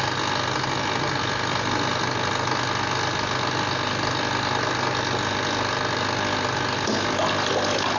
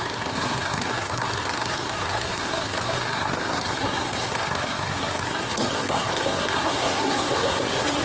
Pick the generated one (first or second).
second